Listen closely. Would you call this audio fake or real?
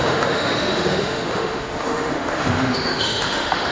fake